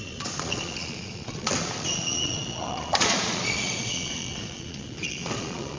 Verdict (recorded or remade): remade